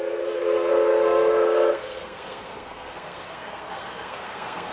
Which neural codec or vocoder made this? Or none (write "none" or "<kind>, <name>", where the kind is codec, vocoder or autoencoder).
codec, SNAC